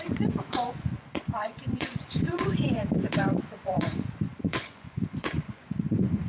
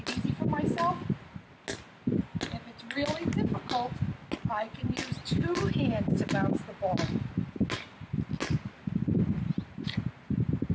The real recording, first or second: second